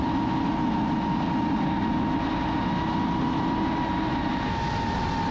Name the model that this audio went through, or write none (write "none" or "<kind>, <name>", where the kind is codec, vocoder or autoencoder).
none